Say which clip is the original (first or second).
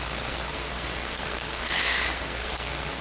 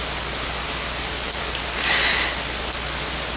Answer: second